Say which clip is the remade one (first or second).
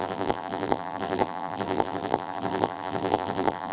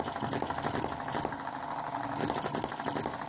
first